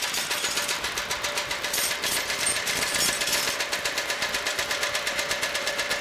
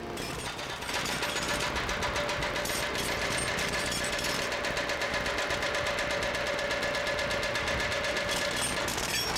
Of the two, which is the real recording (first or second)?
second